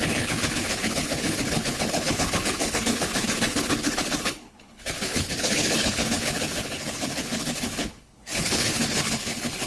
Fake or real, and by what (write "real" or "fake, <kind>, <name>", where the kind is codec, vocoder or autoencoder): fake, codec, HILCodec